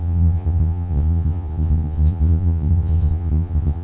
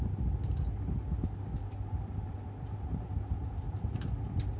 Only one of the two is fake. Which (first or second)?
first